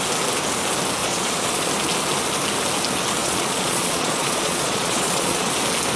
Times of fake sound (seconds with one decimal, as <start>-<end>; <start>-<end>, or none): 1.0-1.7; 3.2-5.5